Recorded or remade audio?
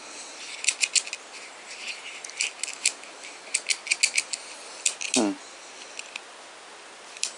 recorded